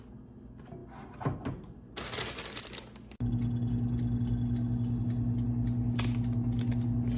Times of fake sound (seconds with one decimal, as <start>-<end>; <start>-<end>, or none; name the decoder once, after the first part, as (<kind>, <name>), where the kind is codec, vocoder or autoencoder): none